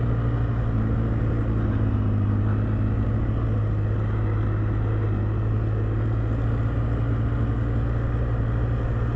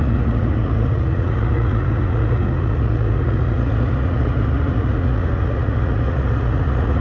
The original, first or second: first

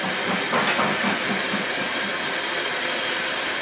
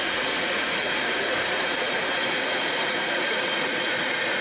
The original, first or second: first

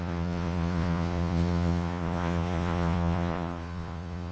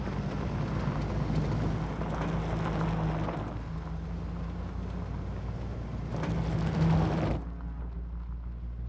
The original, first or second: second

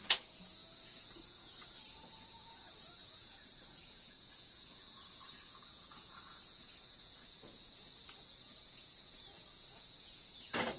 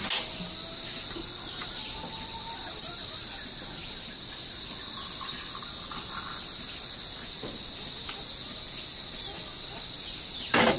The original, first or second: second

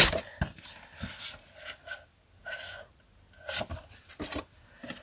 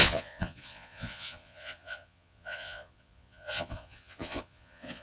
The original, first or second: first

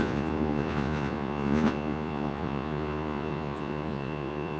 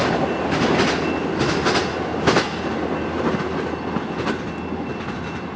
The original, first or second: second